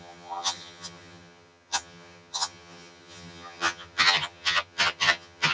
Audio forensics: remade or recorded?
remade